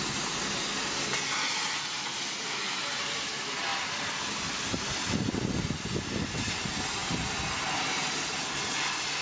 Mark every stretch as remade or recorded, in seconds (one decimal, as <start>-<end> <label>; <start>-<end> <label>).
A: 0.0-9.2 recorded